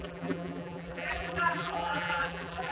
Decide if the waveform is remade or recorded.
remade